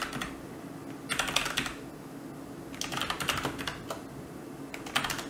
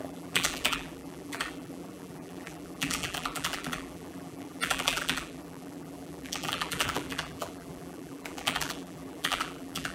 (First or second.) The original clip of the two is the first